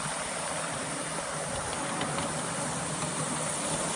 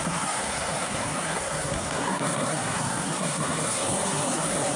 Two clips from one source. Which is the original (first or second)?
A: first